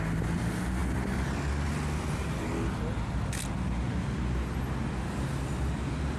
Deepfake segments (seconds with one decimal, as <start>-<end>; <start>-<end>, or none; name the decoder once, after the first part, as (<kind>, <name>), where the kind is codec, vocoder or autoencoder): none